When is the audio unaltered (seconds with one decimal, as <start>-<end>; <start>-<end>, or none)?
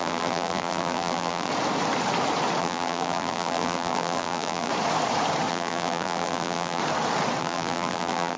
1.5-2.6; 4.7-5.5; 6.8-7.4